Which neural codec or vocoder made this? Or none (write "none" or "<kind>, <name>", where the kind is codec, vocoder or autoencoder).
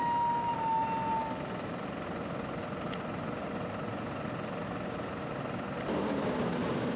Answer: none